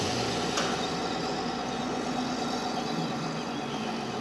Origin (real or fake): fake